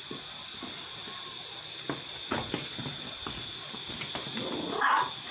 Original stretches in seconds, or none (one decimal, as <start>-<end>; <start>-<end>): 0.0-5.3